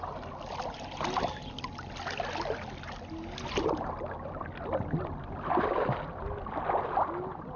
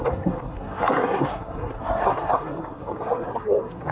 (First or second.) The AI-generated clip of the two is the second